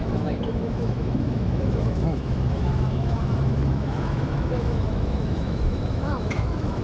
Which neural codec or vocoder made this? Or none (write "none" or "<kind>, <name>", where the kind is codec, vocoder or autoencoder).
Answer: autoencoder, DAC-VAE